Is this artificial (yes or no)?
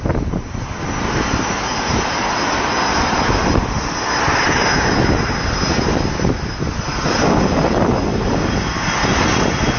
no